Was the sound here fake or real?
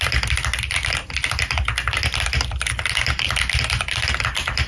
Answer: real